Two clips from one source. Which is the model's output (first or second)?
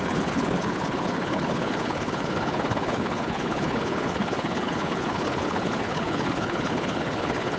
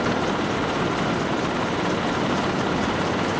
first